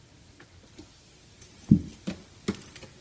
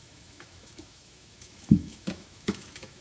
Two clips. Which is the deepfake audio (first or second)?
second